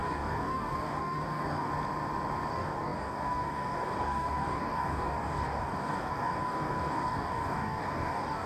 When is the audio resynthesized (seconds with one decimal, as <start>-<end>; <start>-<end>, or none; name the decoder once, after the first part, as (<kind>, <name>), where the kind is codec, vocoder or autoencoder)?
0.0-1.7 (codec, DAC); 2.5-8.5